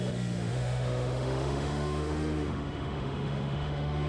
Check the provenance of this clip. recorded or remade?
remade